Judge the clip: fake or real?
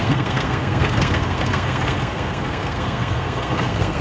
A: fake